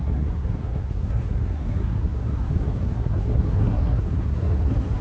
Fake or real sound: fake